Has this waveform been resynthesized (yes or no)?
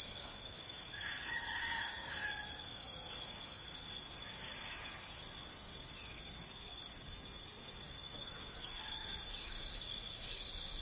yes